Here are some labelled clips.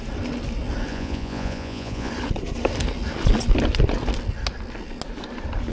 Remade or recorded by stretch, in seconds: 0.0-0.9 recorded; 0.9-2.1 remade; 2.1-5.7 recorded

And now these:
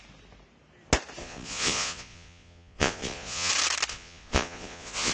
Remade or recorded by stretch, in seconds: 0.0-1.2 recorded; 1.2-3.5 remade; 3.5-3.9 recorded; 3.9-5.1 remade

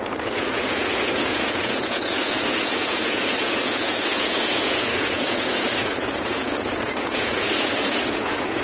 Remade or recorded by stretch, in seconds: 0.0-8.6 remade

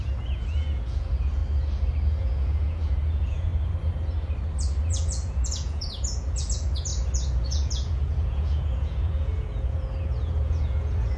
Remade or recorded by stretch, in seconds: 0.0-1.4 remade; 1.4-2.2 recorded; 2.2-3.5 remade; 3.5-4.8 recorded; 4.8-6.9 remade; 6.9-7.4 recorded; 7.4-11.2 remade

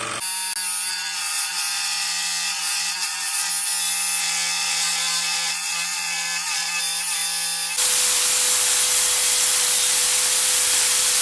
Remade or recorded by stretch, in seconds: 0.0-0.9 recorded; 0.9-3.5 remade; 3.5-4.2 recorded; 4.2-6.8 remade; 6.8-11.2 recorded

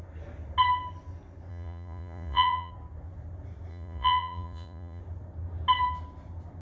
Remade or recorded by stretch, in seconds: 0.0-1.5 recorded; 1.5-2.7 remade; 2.7-3.7 recorded; 3.7-5.0 remade; 5.0-6.6 recorded